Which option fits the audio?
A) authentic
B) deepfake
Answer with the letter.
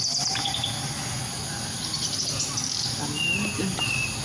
A